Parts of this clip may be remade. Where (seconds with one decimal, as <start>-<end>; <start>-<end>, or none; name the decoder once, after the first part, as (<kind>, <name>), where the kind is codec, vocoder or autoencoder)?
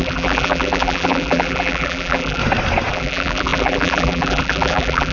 0.0-2.4 (vocoder, BigVGAN v2); 2.9-5.1